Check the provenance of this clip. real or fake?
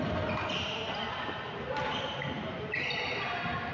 real